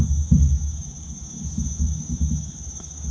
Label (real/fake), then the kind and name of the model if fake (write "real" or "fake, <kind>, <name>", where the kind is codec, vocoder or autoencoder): fake, codec, DAC